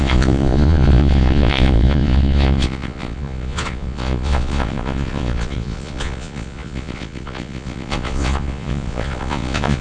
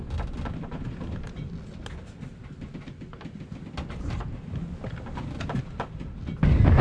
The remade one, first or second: first